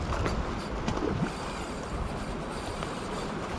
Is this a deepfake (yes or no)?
no